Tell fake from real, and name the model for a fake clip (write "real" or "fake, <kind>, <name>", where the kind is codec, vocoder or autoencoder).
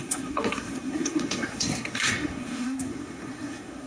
fake, codec, SNAC